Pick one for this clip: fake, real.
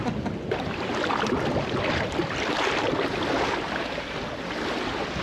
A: fake